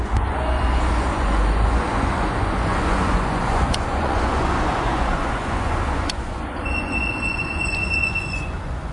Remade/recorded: remade